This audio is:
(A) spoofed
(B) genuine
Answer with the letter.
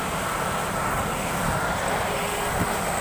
B